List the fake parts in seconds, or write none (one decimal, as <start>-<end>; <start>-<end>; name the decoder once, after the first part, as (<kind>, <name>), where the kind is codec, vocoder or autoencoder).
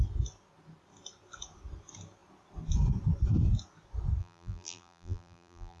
4.2-5.8 (vocoder, BigVGAN v2)